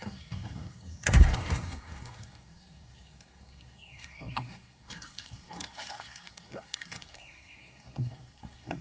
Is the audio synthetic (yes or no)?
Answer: yes